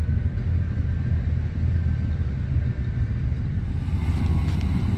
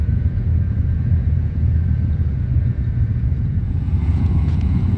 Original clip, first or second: first